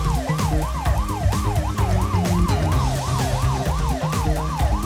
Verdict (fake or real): real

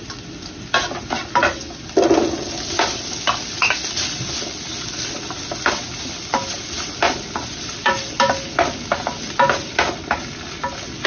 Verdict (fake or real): real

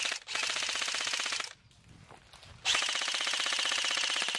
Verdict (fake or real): real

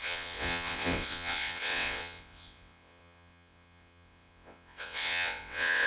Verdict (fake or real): fake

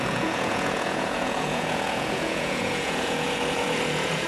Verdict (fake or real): fake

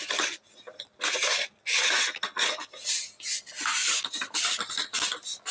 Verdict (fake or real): real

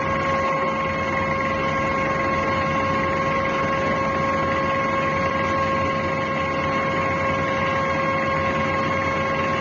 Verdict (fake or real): real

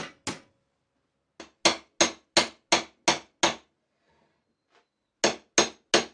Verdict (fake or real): real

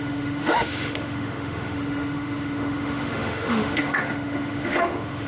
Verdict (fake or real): fake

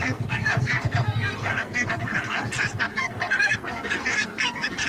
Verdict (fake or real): fake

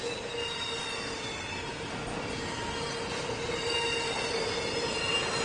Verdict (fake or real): real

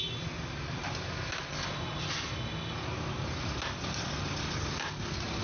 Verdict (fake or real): real